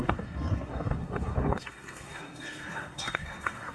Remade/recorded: remade